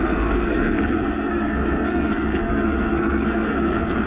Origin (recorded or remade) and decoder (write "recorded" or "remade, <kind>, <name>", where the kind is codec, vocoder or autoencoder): remade, codec, SNAC